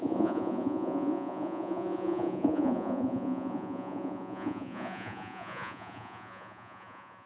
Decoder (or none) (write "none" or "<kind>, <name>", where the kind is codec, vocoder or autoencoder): vocoder, Vocos